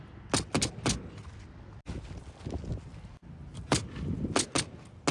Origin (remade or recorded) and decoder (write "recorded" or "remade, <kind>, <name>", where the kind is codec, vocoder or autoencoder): recorded